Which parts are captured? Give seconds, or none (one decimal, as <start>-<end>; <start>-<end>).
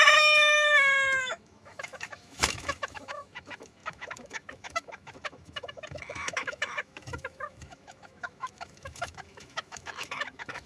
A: none